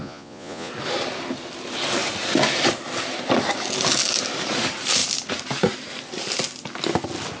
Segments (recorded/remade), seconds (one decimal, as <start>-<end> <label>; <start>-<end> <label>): 0.0-0.7 remade; 0.7-7.4 recorded